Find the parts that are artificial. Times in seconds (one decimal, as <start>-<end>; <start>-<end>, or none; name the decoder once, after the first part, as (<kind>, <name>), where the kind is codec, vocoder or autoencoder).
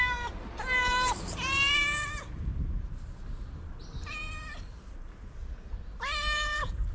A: 0.0-2.5 (vocoder, BigVGAN v2); 3.2-4.2; 5.5-6.9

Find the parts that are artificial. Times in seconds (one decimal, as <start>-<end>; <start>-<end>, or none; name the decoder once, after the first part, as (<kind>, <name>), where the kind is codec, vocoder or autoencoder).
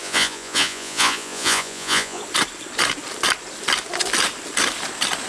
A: 0.0-2.2 (vocoder, Vocos)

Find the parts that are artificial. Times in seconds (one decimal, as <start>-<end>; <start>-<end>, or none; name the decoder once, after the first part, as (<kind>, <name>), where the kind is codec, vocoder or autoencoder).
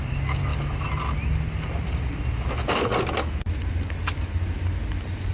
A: none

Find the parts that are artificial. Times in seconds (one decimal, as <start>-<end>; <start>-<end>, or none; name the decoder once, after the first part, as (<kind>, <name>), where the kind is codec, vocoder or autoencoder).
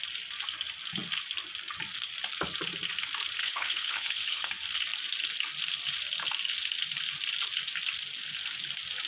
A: 3.4-4.5 (codec, HILCodec)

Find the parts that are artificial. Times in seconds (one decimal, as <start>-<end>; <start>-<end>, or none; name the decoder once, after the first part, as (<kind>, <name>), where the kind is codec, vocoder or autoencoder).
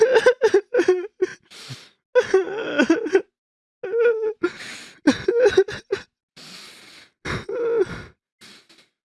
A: none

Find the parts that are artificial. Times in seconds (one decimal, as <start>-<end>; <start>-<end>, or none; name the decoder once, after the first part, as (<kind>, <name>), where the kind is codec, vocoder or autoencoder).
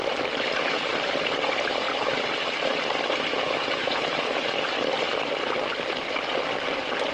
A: 3.3-4.2 (vocoder, Vocos)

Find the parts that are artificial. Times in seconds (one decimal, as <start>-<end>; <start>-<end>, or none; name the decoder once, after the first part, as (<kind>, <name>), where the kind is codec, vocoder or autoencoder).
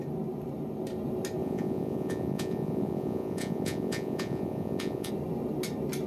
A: 1.4-5.1 (vocoder, Vocos)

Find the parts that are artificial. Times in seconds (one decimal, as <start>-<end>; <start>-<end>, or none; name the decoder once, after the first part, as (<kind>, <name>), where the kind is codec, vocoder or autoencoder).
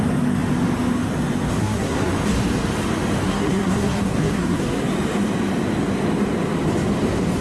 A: 1.6-2.1 (codec, SNAC); 3.2-4.9